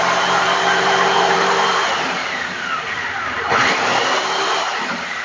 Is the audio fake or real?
fake